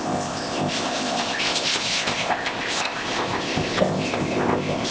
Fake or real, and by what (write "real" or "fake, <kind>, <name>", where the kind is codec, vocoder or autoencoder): fake, codec, ZipCodec